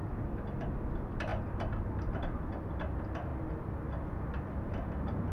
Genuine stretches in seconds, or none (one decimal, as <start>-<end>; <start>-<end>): 0.0-5.3

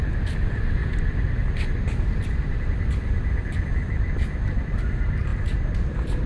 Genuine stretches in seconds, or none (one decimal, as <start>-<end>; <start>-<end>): 0.0-6.3

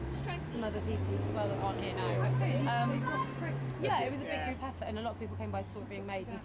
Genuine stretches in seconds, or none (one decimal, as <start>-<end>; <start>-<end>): 0.0-6.4

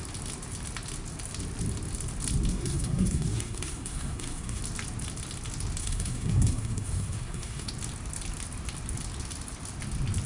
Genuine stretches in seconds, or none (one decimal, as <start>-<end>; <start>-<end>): 0.0-2.5; 4.6-5.8; 7.7-10.3

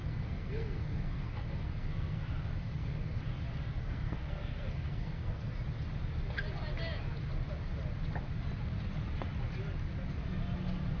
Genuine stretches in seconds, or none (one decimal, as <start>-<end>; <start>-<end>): 2.2-2.6; 3.2-3.8; 5.5-11.0

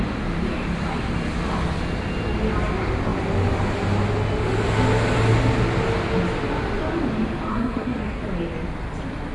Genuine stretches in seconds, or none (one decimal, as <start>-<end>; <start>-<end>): 0.0-7.5; 8.2-9.3

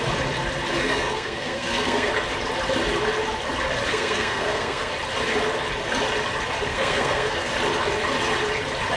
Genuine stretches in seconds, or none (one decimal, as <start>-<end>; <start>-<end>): 0.0-0.8; 2.1-3.9; 4.9-6.7; 7.5-9.0

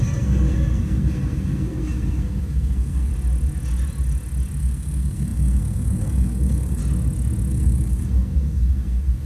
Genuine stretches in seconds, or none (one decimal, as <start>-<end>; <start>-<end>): 3.1-4.6; 6.8-7.5